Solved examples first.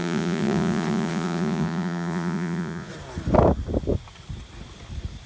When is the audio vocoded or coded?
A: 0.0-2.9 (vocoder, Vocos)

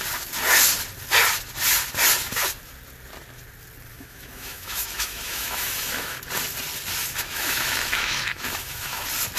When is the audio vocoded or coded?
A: 3.9-6.2 (autoencoder, DAC-VAE); 7.0-9.0

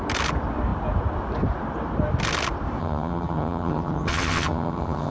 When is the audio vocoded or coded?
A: 2.8-5.1 (vocoder, HiFi-GAN)

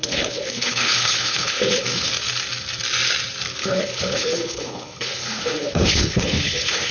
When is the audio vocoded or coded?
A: 0.0-2.1 (codec, HILCodec); 3.6-6.9

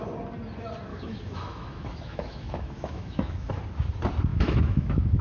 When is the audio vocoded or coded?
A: 0.9-3.5 (autoencoder, DAC-VAE); 4.3-5.2

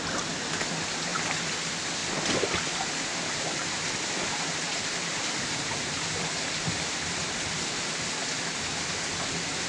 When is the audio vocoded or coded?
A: 1.1-1.6 (vocoder, BigVGAN v2); 2.0-7.2; 8.2-9.0